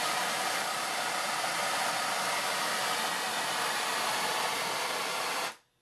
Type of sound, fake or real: fake